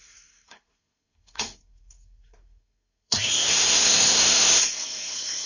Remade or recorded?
remade